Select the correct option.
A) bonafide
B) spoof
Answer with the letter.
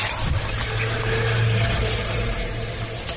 A